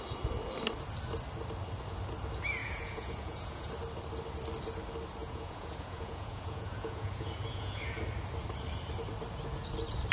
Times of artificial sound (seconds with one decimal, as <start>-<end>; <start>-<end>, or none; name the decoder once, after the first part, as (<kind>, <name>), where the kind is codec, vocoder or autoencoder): 2.6-3.7 (vocoder, Vocos); 5.2-8.0